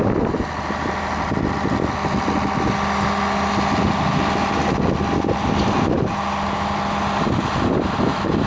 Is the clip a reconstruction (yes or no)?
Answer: no